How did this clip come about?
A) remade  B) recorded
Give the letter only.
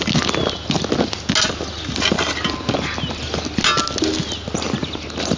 B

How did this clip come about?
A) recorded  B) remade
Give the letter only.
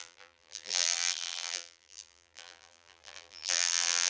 B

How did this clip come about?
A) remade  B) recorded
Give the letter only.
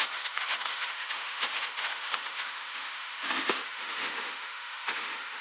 A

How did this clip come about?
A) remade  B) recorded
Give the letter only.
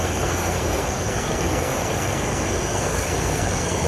A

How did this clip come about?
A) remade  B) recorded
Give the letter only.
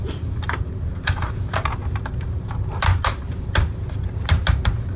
B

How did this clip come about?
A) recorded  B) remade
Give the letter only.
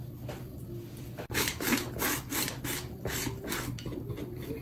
A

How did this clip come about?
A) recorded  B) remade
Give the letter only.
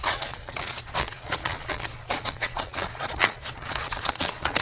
B